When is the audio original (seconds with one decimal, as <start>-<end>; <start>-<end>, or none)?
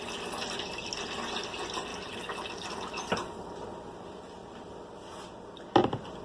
0.0-6.2